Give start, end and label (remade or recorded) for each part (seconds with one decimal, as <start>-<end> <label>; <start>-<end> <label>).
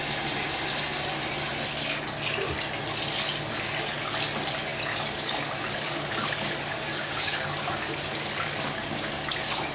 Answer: 0.0-4.7 recorded; 4.7-9.7 remade